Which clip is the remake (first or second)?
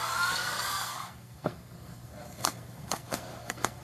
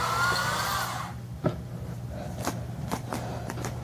first